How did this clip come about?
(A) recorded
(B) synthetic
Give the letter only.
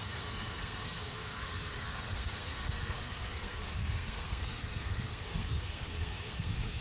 B